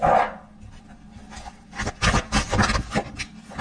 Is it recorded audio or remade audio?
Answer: recorded